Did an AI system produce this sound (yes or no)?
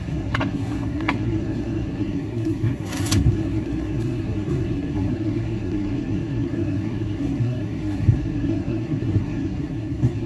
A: yes